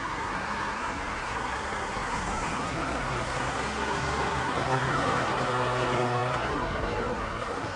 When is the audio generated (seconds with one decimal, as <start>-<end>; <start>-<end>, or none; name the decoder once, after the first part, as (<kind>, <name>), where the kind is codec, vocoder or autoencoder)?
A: 0.0-7.8 (codec, SNAC)